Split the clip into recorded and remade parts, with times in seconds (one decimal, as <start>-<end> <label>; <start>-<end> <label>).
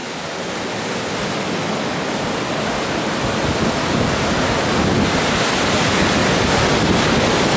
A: 0.0-6.2 recorded; 6.2-7.1 remade; 7.1-7.6 recorded